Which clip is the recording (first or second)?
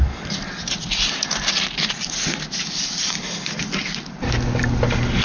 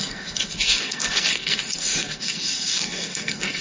first